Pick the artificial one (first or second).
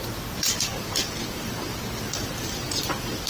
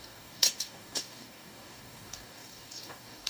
second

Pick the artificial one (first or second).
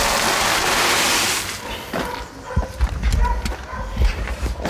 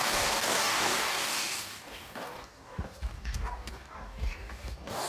second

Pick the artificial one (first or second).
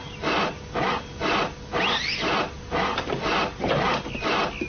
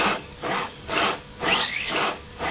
second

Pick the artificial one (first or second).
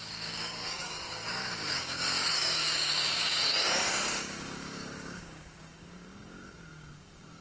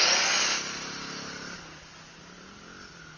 first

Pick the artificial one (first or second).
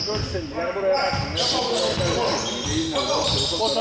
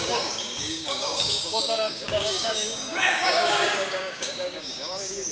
second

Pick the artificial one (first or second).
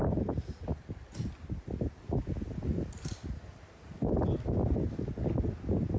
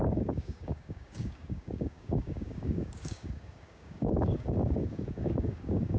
second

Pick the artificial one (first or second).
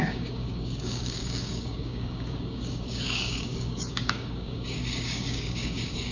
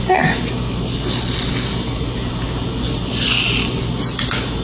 first